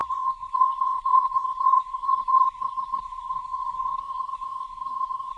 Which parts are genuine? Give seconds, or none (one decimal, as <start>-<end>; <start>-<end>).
none